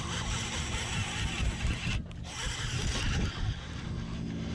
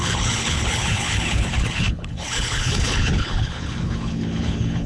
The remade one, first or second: second